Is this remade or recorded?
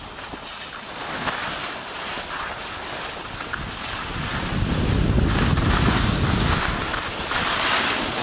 recorded